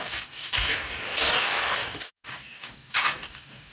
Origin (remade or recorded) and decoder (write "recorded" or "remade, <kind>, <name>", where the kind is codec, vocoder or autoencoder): remade, codec, DAC